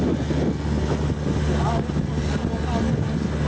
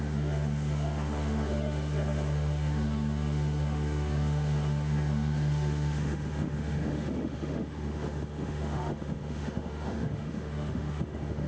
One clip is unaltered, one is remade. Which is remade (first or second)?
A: second